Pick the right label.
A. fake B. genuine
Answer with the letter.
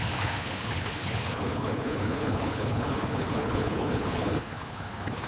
A